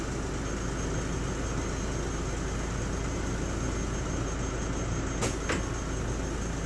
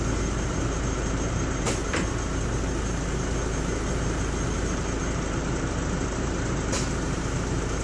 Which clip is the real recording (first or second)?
first